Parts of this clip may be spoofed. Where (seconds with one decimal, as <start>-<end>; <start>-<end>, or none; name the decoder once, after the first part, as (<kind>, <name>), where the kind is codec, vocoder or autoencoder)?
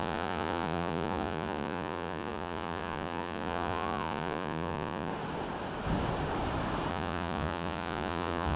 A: 0.0-5.1 (vocoder, Vocos); 6.9-8.6